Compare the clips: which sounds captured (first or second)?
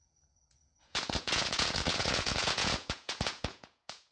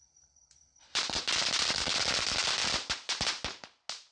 second